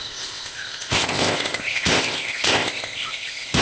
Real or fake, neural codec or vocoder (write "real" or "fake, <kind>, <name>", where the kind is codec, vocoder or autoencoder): fake, codec, ZipCodec